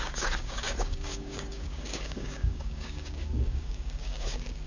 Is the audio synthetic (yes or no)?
yes